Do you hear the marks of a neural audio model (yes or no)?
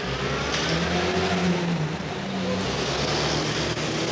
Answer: no